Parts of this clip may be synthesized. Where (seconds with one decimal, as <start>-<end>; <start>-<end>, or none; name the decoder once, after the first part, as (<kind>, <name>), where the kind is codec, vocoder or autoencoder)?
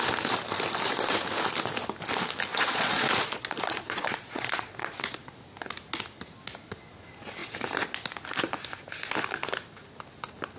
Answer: 2.5-5.3 (vocoder, Vocos)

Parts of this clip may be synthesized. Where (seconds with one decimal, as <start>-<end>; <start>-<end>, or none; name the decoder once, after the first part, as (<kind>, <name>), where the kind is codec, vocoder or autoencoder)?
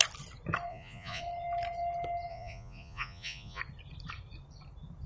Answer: 0.7-1.2 (vocoder, Vocos); 2.3-3.6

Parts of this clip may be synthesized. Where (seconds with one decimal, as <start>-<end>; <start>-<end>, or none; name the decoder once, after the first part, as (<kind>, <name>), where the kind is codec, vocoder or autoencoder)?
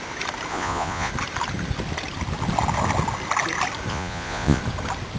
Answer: 0.5-1.1 (vocoder, Vocos); 3.9-4.6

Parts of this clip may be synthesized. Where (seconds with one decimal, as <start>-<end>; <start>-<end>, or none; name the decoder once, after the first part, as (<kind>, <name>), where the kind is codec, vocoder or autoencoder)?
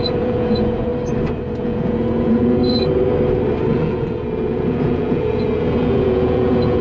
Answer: 0.0-0.9 (vocoder, Vocos); 1.6-2.6; 3.7-6.8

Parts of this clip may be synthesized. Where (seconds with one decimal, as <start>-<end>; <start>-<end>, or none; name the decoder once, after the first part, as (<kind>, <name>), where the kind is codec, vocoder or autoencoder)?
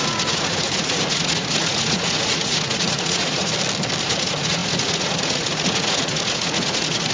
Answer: 0.0-3.5 (vocoder, Vocos); 4.0-7.1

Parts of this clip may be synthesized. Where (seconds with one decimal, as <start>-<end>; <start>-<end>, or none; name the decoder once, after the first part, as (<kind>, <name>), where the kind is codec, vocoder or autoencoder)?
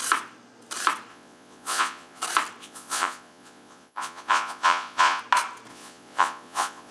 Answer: 1.1-2.2 (vocoder, Vocos); 2.6-5.2; 5.7-6.9